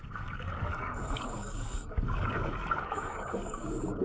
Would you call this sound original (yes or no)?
no